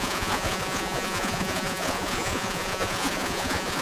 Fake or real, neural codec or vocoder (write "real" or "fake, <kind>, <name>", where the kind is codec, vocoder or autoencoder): fake, vocoder, Vocos